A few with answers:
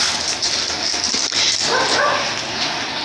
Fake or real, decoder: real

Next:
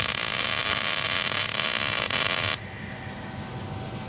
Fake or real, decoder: real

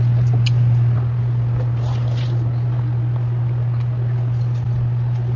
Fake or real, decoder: real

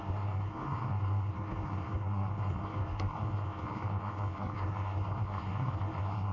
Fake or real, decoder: fake, codec, SNAC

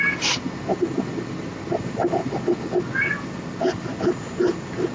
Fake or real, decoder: real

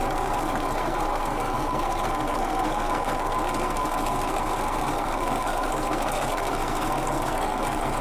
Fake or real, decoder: fake, codec, SNAC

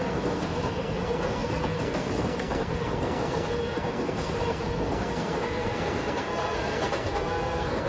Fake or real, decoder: fake, codec, SNAC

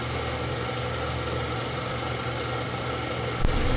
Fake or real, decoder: real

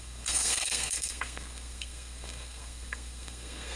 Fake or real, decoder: fake, codec, SNAC